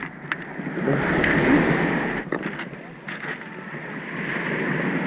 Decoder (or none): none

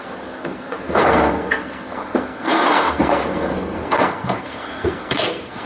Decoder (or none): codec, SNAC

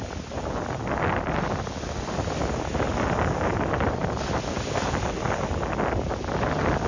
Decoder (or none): none